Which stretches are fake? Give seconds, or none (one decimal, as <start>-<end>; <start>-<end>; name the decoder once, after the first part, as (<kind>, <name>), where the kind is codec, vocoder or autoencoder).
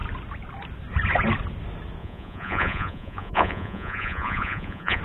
2.0-5.0 (vocoder, Vocos)